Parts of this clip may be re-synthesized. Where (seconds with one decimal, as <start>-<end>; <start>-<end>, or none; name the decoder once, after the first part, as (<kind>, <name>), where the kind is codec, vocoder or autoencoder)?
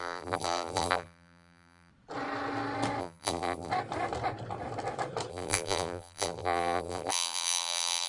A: 0.0-1.9 (vocoder, BigVGAN v2); 3.0-3.7; 5.3-8.1